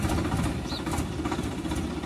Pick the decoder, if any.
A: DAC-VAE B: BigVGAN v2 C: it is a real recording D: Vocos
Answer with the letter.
B